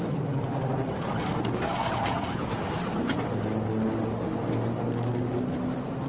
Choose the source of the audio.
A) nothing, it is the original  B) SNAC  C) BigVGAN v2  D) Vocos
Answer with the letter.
A